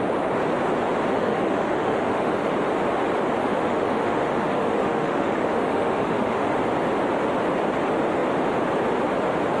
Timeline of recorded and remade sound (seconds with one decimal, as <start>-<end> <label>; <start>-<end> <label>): 0.0-1.1 recorded; 1.1-2.5 remade; 2.5-3.4 recorded; 3.4-6.5 remade; 6.5-9.6 recorded